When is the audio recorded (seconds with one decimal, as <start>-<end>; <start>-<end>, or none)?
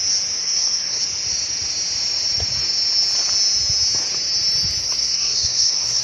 0.0-0.4; 1.0-4.8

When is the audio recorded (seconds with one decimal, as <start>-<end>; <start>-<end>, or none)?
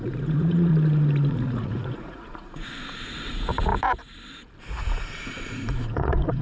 0.7-1.3; 3.7-4.6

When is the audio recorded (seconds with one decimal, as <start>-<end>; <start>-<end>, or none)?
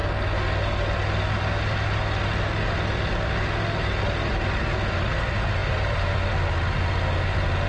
0.0-5.6; 6.3-7.7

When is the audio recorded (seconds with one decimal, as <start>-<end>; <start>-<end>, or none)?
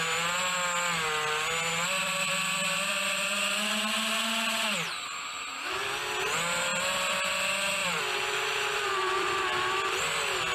0.0-2.0; 3.4-6.7; 7.3-7.8; 9.3-10.5